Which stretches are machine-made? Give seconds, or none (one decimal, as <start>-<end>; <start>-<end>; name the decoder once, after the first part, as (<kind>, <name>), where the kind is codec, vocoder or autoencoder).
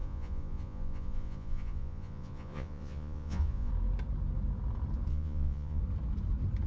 0.0-3.7 (vocoder, Vocos); 5.1-5.8